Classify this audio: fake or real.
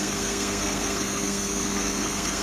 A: fake